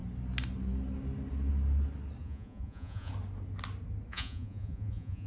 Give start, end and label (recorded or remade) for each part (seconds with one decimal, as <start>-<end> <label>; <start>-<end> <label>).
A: 0.0-2.2 recorded; 2.2-3.1 remade; 3.1-4.1 recorded; 4.1-5.3 remade